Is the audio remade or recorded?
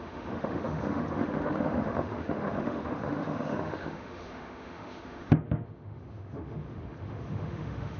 remade